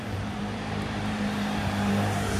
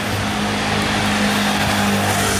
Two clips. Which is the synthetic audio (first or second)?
first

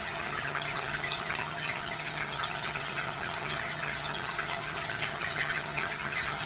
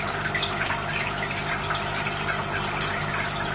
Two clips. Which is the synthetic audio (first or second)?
first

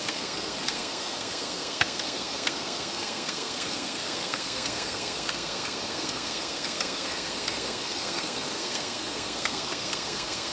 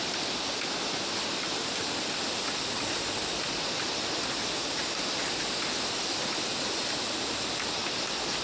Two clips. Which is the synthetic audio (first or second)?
first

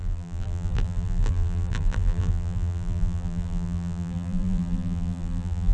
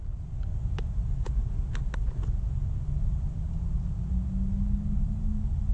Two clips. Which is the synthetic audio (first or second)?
first